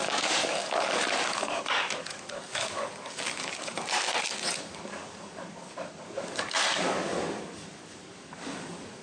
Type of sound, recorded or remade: remade